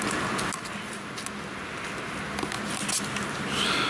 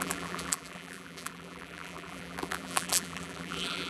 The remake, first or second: second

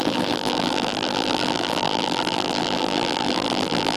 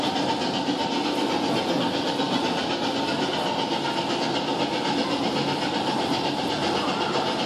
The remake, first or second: first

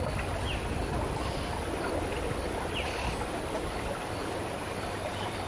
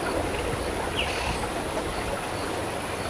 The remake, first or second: first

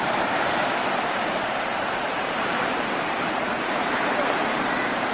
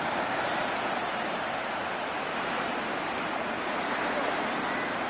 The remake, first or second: first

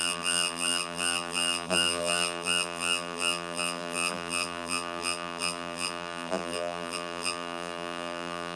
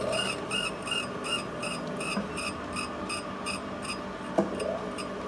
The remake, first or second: first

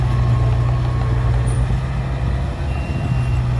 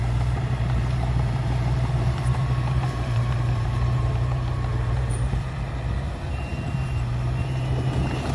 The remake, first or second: second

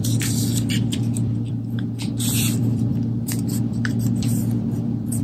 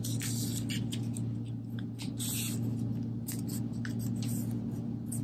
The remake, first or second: first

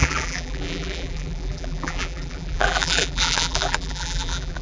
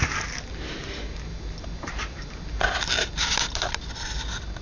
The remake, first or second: first